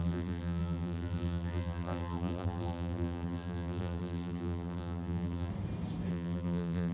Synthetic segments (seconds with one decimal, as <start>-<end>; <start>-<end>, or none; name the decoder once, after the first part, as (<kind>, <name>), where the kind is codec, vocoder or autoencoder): 0.0-5.5 (vocoder, BigVGAN v2); 6.1-6.9

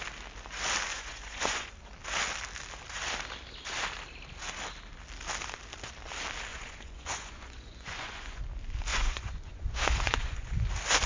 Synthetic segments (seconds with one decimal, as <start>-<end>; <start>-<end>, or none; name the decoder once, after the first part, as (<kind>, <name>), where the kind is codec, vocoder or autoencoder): 0.9-1.7 (vocoder, Vocos); 6.5-8.4; 8.9-10.7

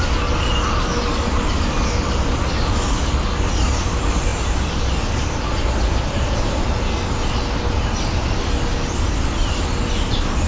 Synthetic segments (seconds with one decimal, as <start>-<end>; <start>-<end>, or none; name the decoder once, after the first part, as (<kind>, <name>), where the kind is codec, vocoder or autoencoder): none

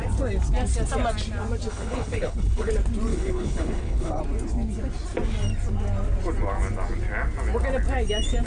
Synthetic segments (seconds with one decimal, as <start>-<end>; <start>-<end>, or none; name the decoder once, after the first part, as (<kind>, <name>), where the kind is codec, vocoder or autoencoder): 1.7-2.7 (codec, HILCodec); 3.1-4.2

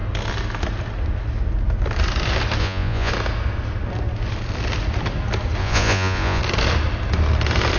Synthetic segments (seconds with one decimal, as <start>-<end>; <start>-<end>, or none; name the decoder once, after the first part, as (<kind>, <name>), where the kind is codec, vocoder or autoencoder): 2.6-3.1 (vocoder, Vocos); 5.6-6.4

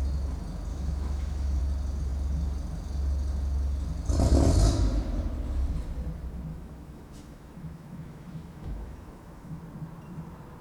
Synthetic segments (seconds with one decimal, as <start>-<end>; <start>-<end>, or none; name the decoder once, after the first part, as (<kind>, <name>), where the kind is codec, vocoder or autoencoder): 0.7-1.6 (autoencoder, DAC-VAE); 6.5-9.6

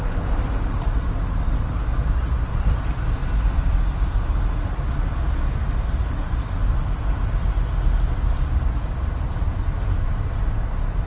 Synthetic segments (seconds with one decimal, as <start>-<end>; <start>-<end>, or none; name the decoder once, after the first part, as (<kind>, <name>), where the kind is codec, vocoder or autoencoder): none